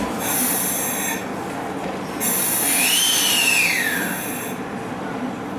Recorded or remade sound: recorded